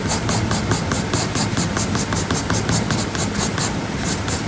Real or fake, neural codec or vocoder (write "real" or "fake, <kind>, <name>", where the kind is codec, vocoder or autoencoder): real